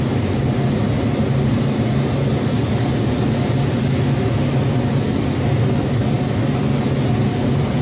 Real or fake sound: real